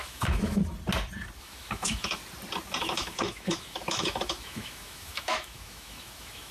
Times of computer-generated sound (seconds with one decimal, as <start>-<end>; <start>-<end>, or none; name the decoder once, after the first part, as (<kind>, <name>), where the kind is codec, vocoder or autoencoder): 0.0-0.6 (autoencoder, DAC-VAE); 1.4-2.2; 2.8-6.5